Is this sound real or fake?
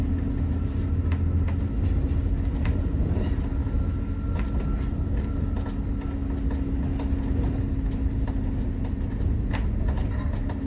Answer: real